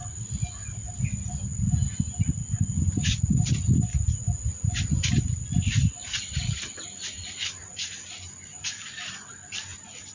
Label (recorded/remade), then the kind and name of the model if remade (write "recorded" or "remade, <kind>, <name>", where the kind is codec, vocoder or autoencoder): recorded